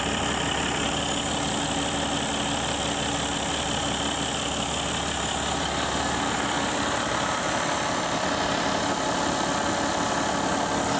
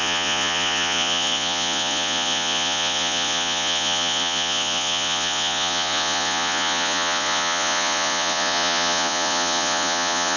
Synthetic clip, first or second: second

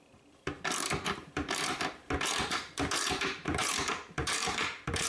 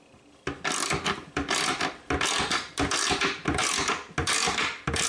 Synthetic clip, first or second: first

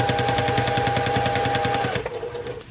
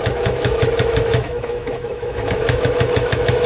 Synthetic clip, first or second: second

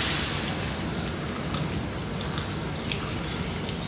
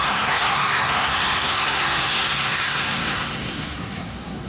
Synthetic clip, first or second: second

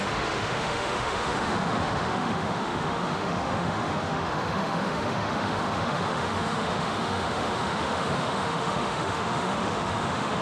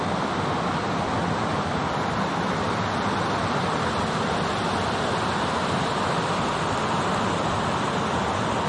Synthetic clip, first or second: first